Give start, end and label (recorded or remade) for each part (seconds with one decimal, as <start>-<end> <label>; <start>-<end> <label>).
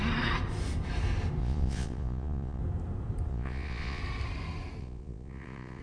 0.0-1.4 recorded; 1.4-2.6 remade; 2.6-3.3 recorded; 3.3-4.0 remade; 4.0-4.8 recorded; 4.8-5.8 remade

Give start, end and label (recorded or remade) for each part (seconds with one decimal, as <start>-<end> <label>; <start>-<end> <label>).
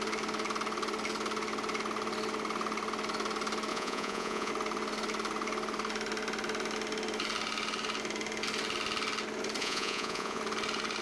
0.0-3.7 recorded; 3.7-4.5 remade; 4.5-9.6 recorded; 9.6-10.4 remade; 10.4-11.0 recorded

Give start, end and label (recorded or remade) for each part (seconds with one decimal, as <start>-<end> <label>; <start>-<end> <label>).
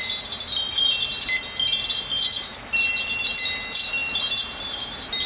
0.0-5.3 recorded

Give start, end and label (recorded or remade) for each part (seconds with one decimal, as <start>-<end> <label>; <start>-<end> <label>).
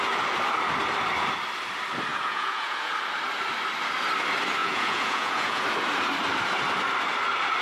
0.0-2.1 recorded; 2.1-2.9 remade; 2.9-4.6 recorded; 4.6-5.6 remade; 5.6-7.6 recorded